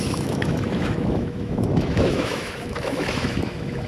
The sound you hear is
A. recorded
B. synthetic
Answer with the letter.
B